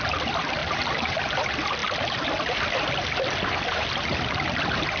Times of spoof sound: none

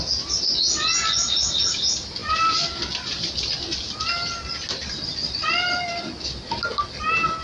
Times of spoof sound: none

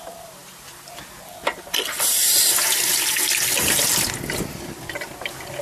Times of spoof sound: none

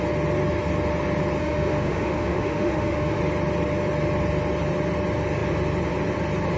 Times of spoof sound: 1.4-3.2 (autoencoder, DAC-VAE)

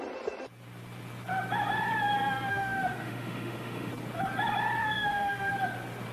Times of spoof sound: 2.5-3.9 (autoencoder, DAC-VAE); 4.8-5.5

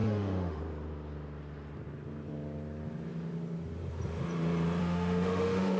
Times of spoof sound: 0.0-0.6 (autoencoder, DAC-VAE); 4.8-5.8